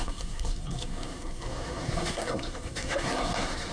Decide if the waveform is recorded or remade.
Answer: remade